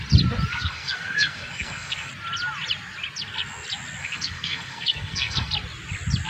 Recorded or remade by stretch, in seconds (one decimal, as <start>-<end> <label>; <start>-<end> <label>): 0.0-0.5 recorded; 0.5-2.1 remade; 2.1-4.0 recorded; 4.0-5.5 remade; 5.5-6.3 recorded